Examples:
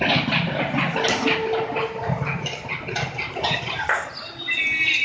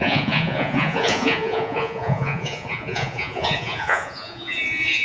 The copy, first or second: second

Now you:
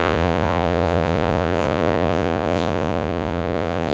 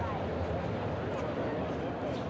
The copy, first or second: first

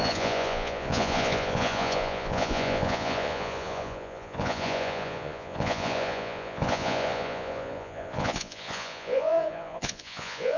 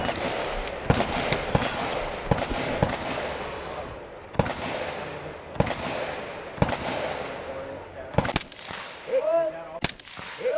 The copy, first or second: first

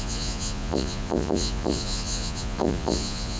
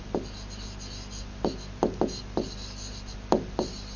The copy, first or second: first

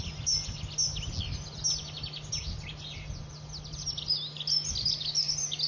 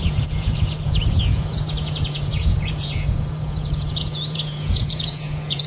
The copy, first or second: second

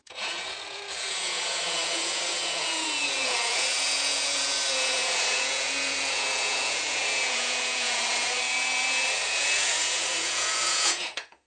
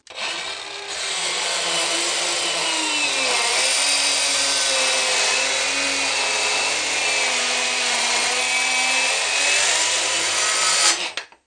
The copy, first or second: first